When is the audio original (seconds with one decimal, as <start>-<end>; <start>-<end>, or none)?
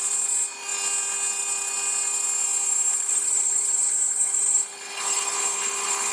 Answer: 0.0-2.9